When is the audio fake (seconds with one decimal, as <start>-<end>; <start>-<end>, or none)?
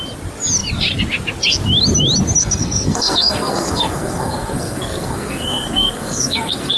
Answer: 2.4-6.8